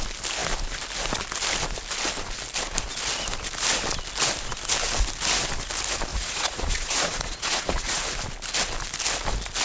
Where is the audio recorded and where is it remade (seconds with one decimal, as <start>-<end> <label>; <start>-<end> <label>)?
0.0-6.1 recorded; 6.1-8.0 remade; 8.0-9.6 recorded